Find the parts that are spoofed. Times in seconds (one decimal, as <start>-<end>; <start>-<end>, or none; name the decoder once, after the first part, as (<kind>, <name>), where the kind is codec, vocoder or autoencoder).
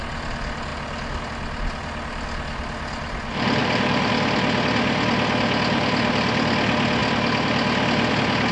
3.6-4.1 (vocoder, BigVGAN v2)